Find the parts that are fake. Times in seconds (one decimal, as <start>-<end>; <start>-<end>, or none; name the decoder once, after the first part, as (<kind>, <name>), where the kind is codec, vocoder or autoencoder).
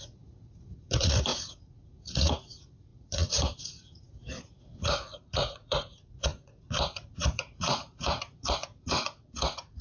0.0-9.8 (vocoder, Vocos)